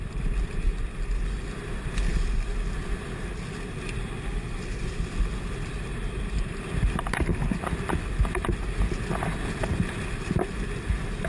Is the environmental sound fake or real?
real